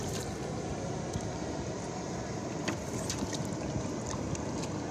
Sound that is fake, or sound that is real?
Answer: real